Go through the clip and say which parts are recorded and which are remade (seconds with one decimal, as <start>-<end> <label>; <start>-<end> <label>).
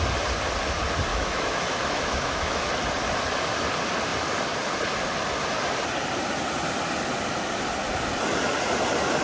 0.0-1.1 recorded; 1.1-2.7 remade; 2.7-9.2 recorded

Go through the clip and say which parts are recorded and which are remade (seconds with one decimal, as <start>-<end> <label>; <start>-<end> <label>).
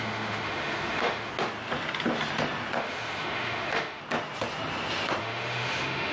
0.0-1.3 remade; 1.3-2.8 recorded; 2.8-4.0 remade; 4.0-5.2 recorded; 5.2-6.1 remade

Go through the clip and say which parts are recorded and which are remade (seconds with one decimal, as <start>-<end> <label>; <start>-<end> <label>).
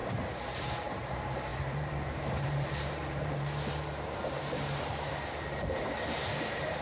0.0-0.6 recorded; 0.6-6.8 remade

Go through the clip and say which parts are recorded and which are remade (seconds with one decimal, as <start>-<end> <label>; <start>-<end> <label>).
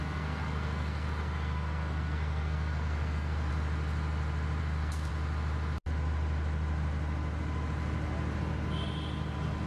0.0-3.5 remade; 3.5-4.6 recorded; 4.6-5.1 remade; 5.1-9.7 recorded